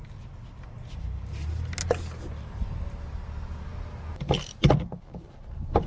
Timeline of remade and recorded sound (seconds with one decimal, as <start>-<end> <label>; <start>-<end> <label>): 0.0-5.9 recorded